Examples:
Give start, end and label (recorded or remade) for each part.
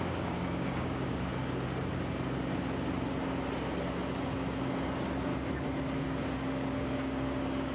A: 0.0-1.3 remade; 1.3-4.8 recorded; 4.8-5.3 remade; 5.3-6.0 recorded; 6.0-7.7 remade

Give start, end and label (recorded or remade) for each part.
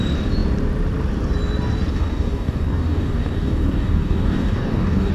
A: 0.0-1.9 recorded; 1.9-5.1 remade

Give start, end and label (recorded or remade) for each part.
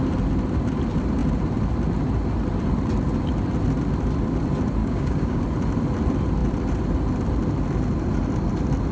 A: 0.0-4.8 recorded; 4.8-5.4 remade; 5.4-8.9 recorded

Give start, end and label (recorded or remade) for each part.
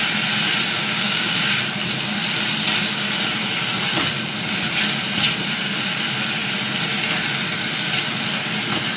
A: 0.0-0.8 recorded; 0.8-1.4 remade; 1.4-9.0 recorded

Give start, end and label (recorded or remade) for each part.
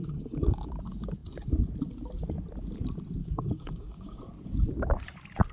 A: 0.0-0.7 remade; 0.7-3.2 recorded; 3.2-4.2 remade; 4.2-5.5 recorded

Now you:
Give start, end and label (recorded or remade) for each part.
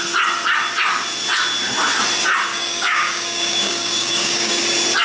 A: 0.0-2.5 recorded; 2.5-4.6 remade; 4.6-5.0 recorded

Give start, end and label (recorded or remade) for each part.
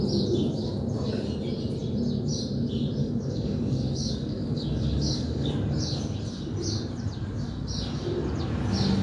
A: 0.0-3.0 recorded; 3.0-5.5 remade; 5.5-9.0 recorded